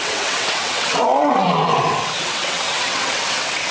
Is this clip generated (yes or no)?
yes